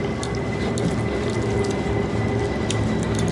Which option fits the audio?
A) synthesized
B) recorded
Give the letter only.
B